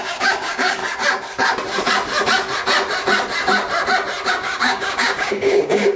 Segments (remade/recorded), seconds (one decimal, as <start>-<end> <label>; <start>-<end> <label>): 0.0-0.8 remade; 0.8-4.3 recorded; 4.3-6.0 remade